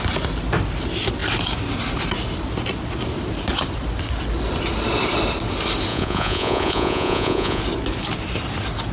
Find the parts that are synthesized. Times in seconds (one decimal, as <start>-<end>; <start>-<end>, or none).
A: 5.9-7.6